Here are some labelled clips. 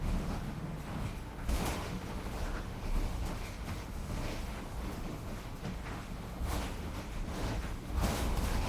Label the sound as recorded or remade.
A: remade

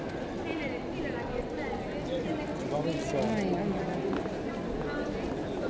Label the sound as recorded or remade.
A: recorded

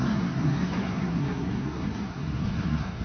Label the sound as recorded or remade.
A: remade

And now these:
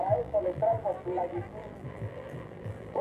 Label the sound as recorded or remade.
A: remade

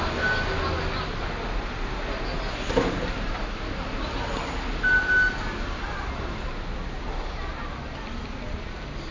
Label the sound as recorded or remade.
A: recorded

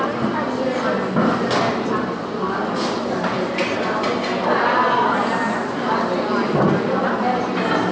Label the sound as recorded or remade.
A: recorded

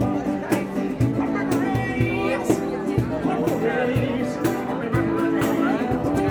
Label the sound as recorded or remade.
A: recorded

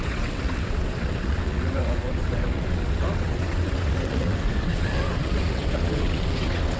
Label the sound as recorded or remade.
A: remade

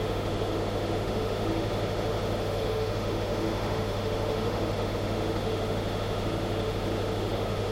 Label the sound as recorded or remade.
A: remade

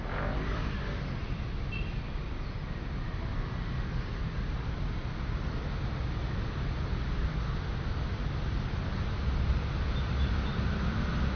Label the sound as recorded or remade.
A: recorded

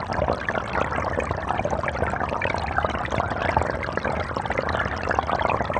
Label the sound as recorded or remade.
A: recorded